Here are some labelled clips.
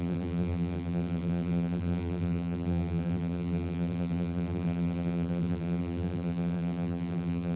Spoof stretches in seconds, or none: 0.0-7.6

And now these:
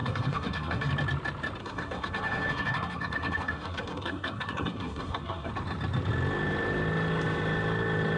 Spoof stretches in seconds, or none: 0.0-0.9; 1.6-5.5

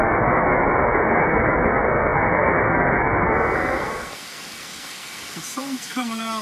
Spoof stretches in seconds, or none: 0.0-6.4

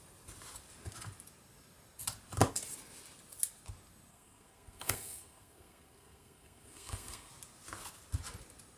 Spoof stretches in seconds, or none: 4.1-7.3

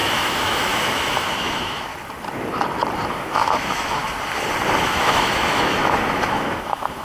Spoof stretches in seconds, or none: 0.0-1.9; 3.1-4.0; 4.8-7.0

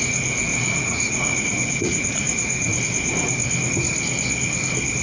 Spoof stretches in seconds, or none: 0.5-2.8